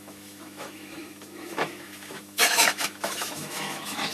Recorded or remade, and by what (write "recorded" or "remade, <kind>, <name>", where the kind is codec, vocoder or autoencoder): remade, autoencoder, DAC-VAE